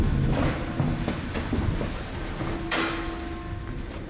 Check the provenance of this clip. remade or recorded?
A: recorded